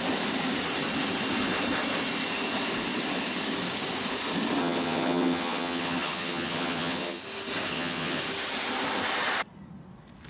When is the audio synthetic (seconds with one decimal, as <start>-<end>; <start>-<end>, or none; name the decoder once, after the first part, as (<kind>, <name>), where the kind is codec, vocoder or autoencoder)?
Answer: 4.6-7.2 (vocoder, HiFi-GAN); 7.7-8.2